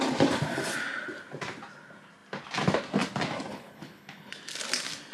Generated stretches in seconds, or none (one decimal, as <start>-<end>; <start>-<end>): 3.5-4.3